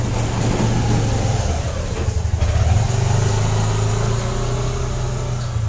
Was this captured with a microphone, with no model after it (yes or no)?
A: yes